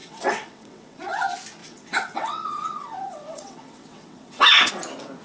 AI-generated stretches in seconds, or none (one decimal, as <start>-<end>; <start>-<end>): 0.0-1.2; 1.6-4.7